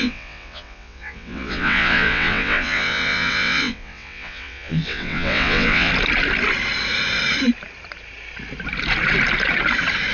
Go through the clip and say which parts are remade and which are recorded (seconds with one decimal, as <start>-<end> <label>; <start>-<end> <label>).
0.0-5.9 remade; 5.9-10.1 recorded